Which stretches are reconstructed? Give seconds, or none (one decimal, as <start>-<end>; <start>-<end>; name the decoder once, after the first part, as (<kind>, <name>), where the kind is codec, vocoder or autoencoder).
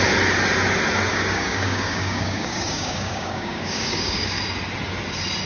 1.1-4.4 (codec, DAC)